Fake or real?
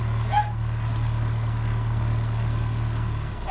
fake